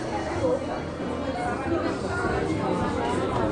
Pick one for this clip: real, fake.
real